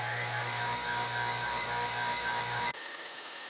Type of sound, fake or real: fake